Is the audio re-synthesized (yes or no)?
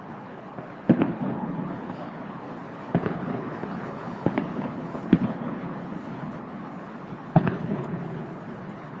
yes